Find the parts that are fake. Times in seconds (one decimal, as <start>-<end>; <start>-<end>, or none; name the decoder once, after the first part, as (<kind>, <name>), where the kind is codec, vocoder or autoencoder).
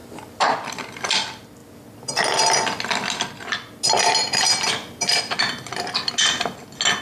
0.0-0.7 (vocoder, BigVGAN v2)